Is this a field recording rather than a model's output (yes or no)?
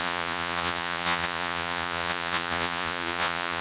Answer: no